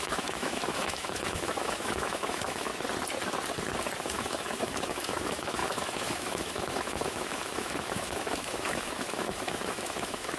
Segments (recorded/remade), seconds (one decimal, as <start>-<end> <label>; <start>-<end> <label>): 0.0-2.7 remade; 2.7-4.0 recorded; 4.0-10.4 remade